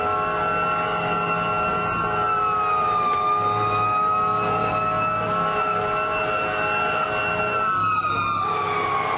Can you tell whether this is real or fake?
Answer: real